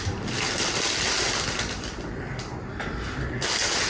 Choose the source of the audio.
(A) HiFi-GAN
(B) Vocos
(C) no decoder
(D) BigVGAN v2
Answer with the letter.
C